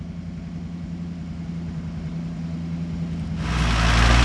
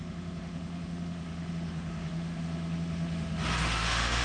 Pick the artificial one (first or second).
second